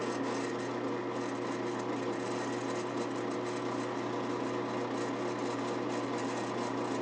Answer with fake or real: real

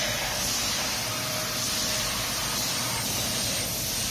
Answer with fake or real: fake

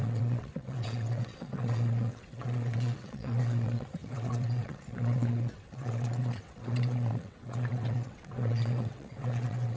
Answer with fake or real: fake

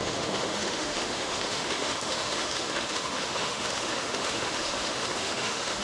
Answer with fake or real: fake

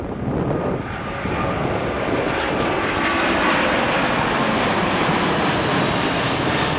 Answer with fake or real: real